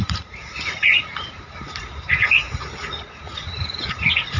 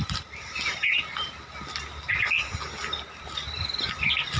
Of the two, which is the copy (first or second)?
first